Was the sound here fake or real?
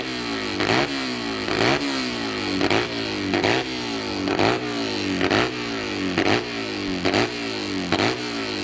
real